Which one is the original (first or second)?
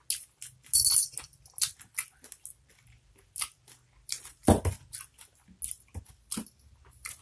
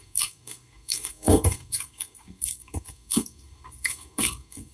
first